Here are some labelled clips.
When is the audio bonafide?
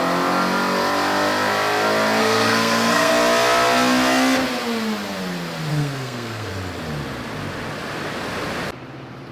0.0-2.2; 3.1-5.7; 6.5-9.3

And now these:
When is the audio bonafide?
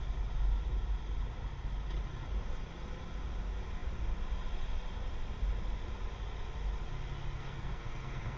0.0-7.4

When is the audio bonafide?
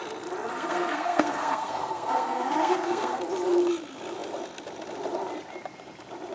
0.0-0.5; 3.2-6.3